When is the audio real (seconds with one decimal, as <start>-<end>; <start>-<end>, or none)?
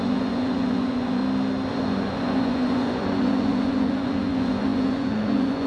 1.2-1.7